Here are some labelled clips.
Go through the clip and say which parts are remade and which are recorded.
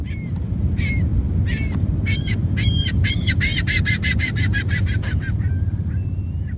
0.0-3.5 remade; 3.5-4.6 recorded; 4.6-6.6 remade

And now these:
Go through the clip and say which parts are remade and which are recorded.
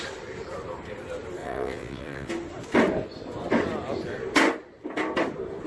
0.0-1.4 recorded; 1.4-2.3 remade; 2.3-5.7 recorded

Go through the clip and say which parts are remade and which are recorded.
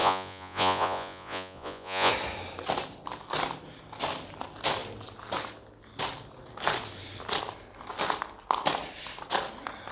0.0-2.1 remade; 2.1-9.9 recorded